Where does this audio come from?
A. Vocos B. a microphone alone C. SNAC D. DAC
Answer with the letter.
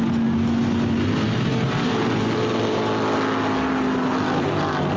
B